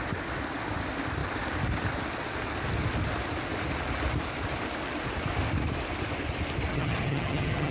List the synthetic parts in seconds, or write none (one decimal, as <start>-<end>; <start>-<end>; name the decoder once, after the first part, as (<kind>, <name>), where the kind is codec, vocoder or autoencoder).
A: 6.7-7.7 (vocoder, HiFi-GAN)